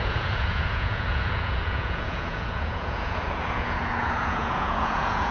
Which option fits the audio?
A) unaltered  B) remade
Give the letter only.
B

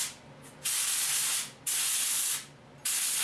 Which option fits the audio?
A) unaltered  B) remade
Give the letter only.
A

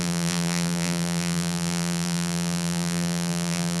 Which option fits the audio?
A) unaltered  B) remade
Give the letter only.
B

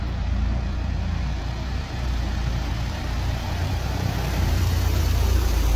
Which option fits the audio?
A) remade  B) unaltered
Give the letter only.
A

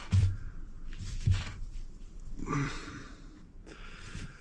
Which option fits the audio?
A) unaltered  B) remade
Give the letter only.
B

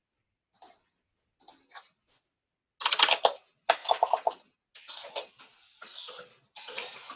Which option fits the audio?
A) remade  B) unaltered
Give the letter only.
B